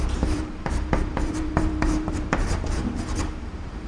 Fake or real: fake